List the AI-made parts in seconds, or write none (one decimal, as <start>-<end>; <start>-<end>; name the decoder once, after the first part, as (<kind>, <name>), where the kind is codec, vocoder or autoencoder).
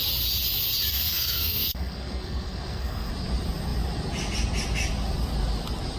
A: 0.9-3.1 (codec, SNAC)